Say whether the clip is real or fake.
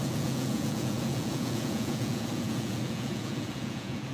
fake